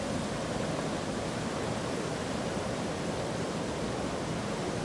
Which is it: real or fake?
real